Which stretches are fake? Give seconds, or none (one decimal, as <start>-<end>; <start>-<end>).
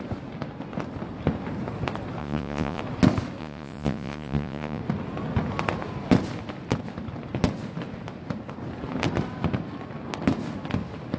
2.2-2.8; 3.4-4.8